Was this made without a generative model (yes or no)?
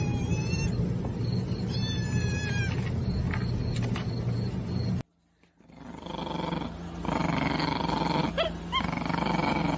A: yes